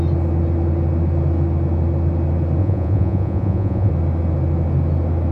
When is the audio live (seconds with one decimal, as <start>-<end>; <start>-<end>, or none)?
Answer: 0.0-2.6; 3.9-5.3